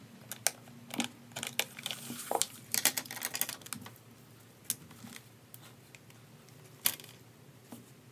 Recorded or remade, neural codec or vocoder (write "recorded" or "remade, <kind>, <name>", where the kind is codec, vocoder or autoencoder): recorded